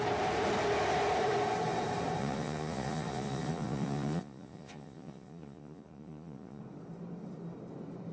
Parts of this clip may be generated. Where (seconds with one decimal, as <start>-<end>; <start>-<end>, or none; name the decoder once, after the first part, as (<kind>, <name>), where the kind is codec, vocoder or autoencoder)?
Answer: 2.2-6.6 (vocoder, Vocos)